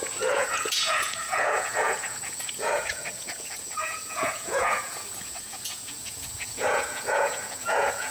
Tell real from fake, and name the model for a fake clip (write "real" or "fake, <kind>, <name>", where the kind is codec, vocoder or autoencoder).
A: fake, vocoder, Vocos